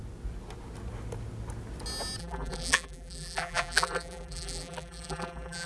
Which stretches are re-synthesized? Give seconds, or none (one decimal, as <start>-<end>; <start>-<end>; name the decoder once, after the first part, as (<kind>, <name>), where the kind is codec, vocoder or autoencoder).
2.2-5.7 (vocoder, BigVGAN v2)